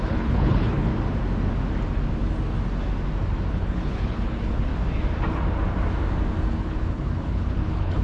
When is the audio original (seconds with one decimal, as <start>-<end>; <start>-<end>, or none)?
0.9-3.5; 4.7-6.5

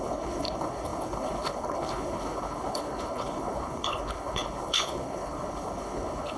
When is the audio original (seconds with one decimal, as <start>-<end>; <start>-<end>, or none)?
none

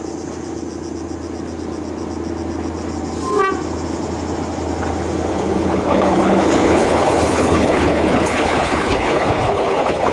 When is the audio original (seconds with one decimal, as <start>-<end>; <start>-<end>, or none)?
0.0-5.3

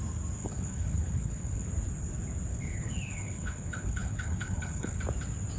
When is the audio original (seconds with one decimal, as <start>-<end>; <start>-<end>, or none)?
0.0-0.4; 1.7-2.5; 5.0-5.6

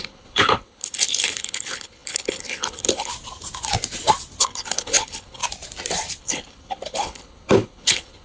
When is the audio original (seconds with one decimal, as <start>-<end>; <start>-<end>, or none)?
3.1-4.4; 5.4-6.2

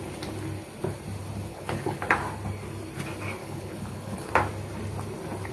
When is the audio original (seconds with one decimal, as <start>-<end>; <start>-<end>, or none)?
0.0-1.5; 2.0-3.4; 4.3-5.5

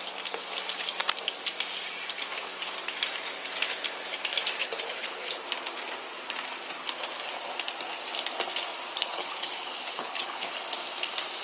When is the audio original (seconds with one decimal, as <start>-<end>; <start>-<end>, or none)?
0.0-4.6; 5.4-9.0; 10.5-11.4